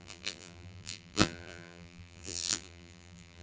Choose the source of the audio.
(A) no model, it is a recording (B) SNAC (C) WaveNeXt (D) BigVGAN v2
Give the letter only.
D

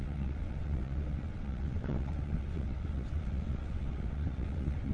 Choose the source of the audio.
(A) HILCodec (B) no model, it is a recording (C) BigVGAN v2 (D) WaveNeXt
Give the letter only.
D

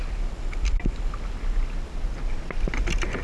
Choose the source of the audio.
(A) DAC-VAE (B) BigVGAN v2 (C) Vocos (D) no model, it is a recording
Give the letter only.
D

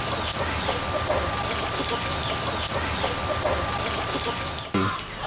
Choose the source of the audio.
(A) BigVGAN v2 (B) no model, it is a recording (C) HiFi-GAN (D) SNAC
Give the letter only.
B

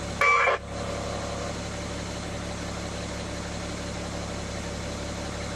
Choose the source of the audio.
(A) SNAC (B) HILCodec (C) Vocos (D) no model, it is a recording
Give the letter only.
D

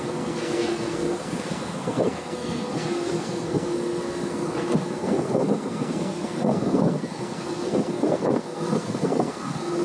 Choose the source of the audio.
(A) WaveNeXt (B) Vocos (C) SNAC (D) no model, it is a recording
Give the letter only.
C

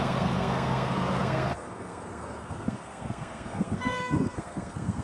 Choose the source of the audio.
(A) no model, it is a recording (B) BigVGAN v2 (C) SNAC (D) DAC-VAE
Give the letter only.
C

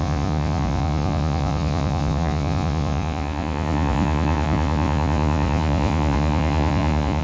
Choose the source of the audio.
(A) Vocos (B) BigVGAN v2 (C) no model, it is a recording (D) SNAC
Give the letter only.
A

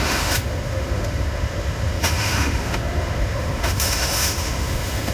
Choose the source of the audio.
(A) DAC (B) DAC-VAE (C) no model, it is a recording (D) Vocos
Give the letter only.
B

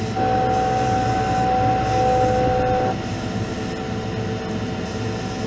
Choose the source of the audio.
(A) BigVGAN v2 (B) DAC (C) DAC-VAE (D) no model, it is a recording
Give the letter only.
D